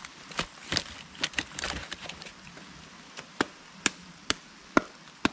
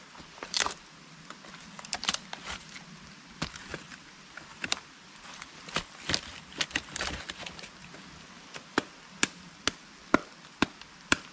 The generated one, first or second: first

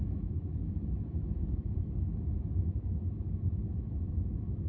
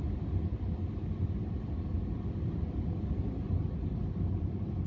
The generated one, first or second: first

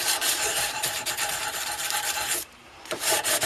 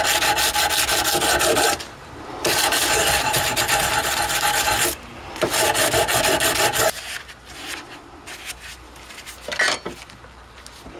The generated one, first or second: first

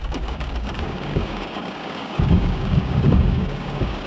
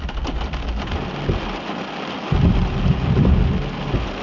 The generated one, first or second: first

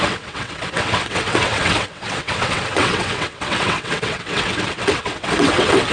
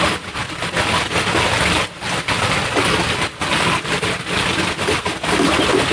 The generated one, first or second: first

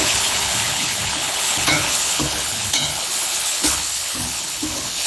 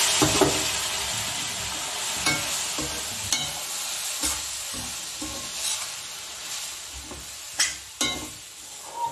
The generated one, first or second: first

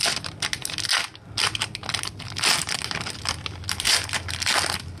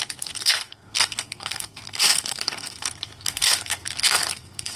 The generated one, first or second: second